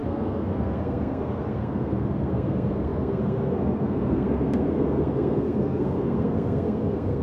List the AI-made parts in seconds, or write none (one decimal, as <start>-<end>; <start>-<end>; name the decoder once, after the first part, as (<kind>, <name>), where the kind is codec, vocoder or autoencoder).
0.0-7.2 (codec, SNAC)